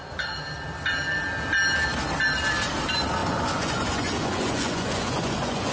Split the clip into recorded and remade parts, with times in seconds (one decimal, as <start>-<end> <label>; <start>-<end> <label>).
0.0-3.2 recorded; 3.2-5.7 remade